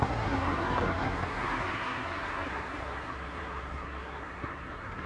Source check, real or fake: fake